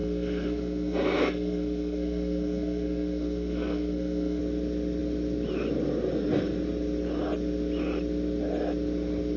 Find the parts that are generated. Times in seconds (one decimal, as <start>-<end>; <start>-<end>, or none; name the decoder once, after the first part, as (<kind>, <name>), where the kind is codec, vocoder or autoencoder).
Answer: 0.0-4.4 (codec, SNAC)